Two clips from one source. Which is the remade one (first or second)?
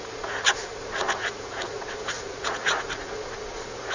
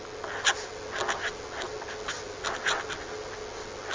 first